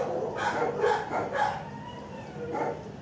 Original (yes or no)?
no